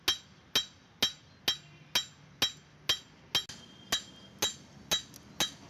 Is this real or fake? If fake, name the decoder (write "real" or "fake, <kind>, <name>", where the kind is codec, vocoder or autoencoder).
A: real